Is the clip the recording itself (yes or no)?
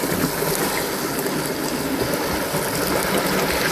yes